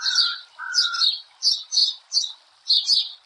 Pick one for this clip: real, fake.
real